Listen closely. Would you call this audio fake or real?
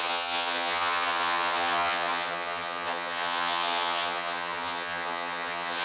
fake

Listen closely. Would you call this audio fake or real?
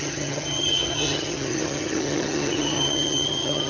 fake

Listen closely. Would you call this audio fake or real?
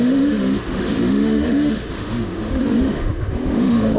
fake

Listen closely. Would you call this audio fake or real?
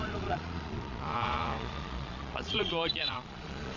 fake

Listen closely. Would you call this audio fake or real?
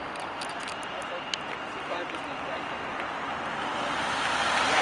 real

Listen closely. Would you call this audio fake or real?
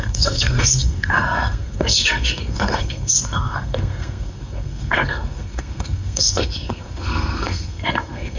fake